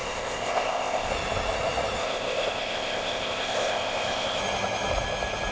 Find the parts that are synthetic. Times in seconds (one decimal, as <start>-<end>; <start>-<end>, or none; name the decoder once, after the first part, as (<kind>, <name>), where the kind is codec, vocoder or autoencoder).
0.0-1.1 (codec, ZipCodec); 2.0-4.4